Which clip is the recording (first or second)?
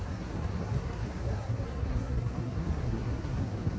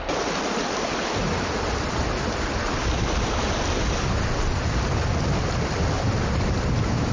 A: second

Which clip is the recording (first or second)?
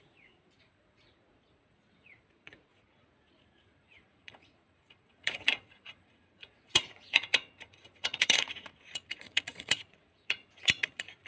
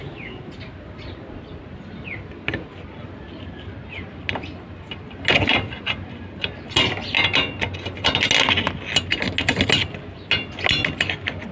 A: second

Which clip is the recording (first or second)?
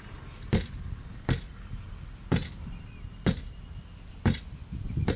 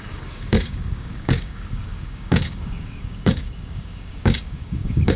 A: first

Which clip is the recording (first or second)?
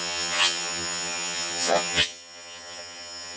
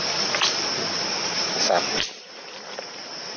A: second